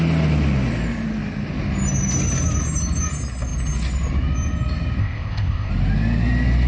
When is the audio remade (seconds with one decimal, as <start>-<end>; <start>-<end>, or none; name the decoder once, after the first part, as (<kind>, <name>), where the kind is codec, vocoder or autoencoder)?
5.0-5.7 (codec, ZipCodec)

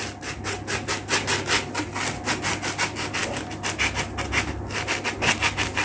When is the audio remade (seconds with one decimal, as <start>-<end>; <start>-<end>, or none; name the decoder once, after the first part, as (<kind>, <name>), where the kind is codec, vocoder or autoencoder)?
none

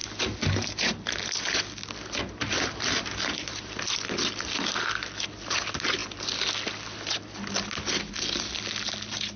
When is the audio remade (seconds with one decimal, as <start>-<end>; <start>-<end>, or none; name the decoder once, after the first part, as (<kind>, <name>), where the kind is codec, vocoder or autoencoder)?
none

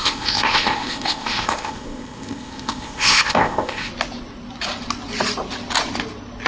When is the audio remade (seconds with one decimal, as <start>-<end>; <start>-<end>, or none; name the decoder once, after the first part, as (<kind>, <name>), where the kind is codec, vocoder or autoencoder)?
0.0-3.9 (codec, ZipCodec)

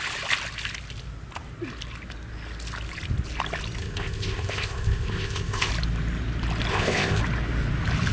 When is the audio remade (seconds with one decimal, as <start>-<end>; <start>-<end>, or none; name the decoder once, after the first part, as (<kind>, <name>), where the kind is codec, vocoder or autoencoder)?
3.8-5.7 (codec, ZipCodec); 6.7-7.2